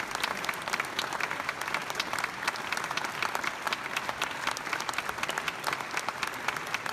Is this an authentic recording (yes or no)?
yes